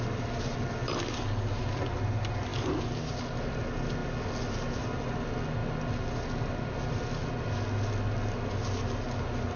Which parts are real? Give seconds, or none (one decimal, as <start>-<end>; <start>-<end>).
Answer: 0.0-9.6